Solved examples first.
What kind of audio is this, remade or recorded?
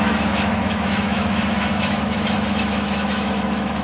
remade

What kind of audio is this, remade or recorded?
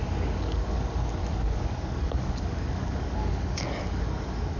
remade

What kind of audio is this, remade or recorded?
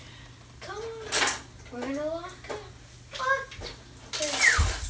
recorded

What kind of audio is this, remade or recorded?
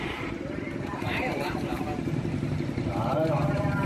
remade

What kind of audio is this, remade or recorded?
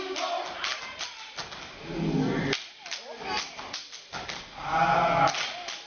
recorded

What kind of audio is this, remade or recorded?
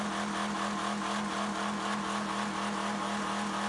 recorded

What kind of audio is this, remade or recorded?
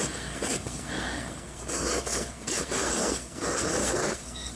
remade